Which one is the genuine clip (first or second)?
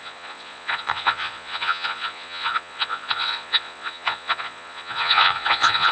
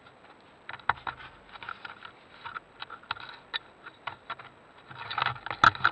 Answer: second